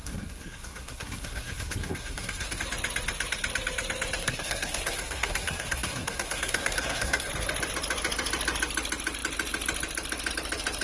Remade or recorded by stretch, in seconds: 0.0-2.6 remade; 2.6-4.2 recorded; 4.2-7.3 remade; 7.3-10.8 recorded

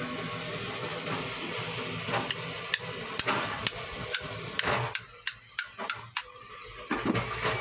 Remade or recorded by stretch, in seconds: 0.0-7.6 recorded